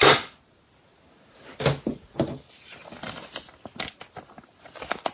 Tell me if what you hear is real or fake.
real